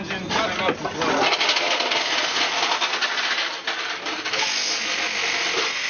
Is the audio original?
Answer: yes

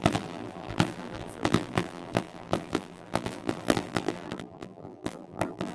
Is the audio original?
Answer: no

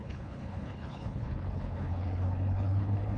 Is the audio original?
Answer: no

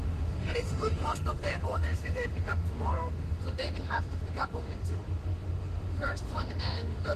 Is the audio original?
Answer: no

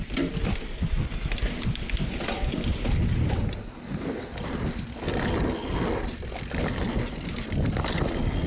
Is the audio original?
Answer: yes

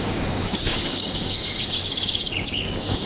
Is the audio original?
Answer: no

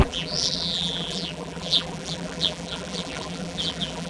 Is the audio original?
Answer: no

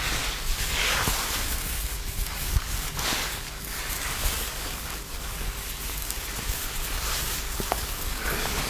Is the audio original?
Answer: no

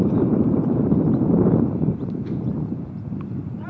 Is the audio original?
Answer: no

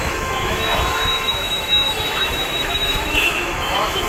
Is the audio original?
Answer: no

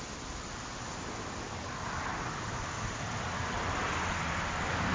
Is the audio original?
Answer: yes